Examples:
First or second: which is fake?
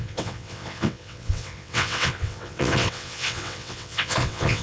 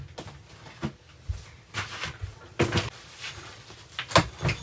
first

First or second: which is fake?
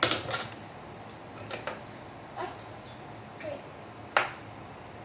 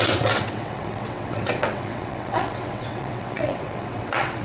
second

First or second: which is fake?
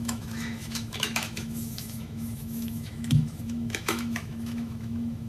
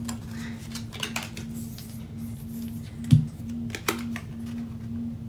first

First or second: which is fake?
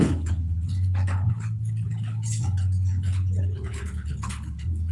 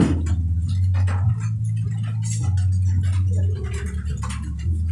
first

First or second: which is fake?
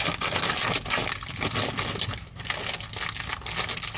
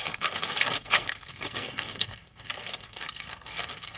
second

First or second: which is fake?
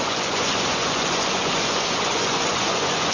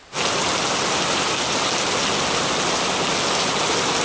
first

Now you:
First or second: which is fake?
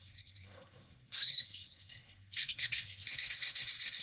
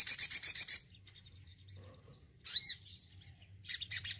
first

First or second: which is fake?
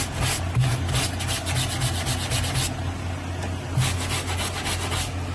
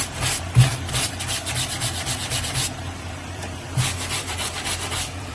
second